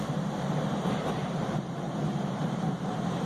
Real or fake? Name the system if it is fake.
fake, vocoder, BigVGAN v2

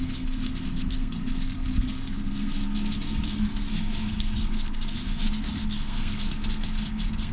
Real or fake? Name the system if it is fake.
fake, codec, SNAC